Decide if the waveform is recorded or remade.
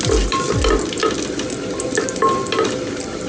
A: recorded